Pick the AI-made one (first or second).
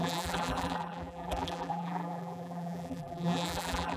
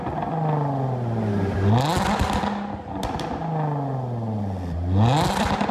first